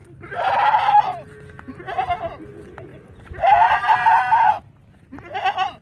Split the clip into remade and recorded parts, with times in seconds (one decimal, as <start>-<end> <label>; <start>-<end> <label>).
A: 0.0-5.8 recorded